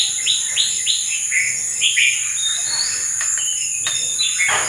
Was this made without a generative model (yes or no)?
yes